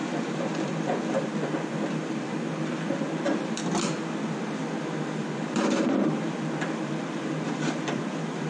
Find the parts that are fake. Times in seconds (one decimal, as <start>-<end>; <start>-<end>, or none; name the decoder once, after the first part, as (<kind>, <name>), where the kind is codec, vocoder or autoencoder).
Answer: 0.0-8.5 (vocoder, BigVGAN v2)